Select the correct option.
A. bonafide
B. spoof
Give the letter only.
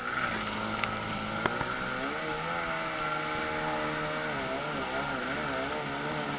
A